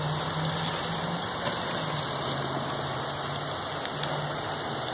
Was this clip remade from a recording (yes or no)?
no